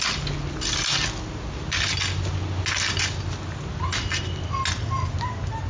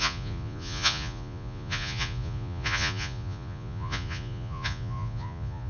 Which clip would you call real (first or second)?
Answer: first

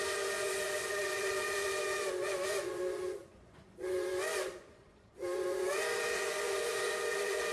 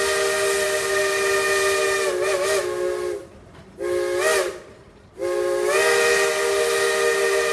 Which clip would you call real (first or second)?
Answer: second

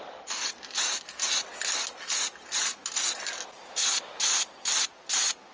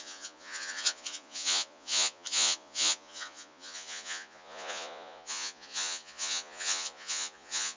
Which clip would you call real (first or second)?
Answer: first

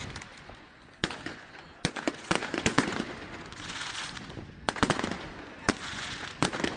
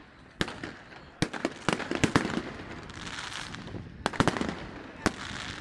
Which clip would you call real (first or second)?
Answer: second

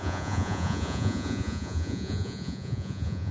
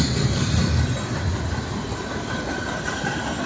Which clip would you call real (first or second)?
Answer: second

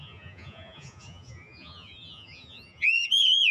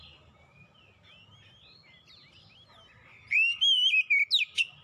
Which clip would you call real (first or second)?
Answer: second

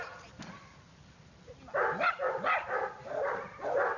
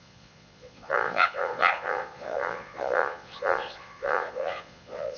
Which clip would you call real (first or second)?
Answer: first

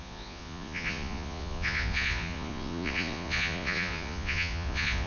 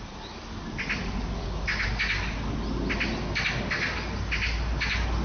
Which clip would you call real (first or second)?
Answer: second